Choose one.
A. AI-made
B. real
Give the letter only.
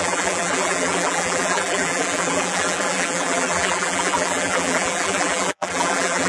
A